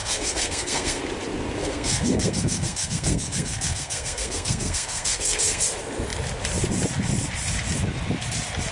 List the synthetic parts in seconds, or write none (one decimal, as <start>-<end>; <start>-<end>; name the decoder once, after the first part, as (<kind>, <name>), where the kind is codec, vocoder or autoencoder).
0.0-1.0 (codec, SNAC); 1.6-5.6